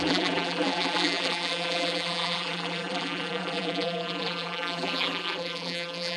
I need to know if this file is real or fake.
fake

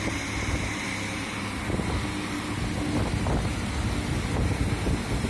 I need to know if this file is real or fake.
real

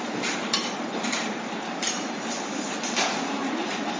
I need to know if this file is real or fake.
fake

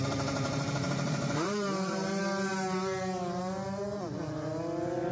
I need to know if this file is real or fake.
fake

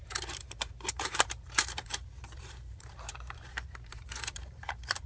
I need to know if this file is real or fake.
fake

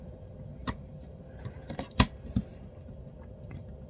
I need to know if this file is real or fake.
fake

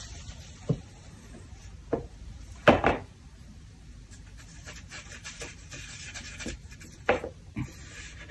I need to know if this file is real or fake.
fake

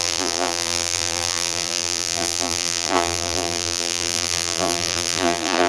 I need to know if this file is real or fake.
fake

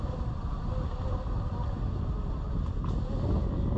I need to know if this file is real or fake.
real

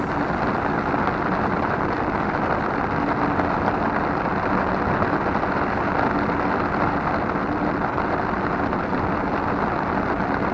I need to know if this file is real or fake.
real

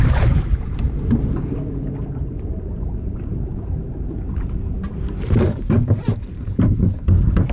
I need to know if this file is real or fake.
fake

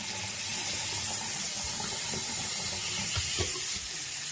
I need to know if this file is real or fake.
real